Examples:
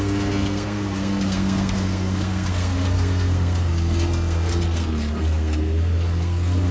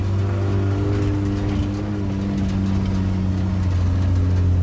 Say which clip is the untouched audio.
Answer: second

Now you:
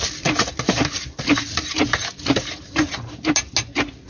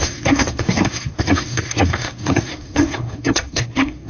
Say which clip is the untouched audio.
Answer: first